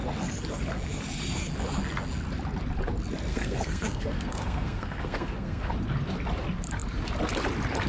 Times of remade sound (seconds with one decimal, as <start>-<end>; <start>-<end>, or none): 3.3-5.7